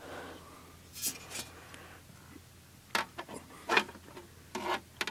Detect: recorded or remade recorded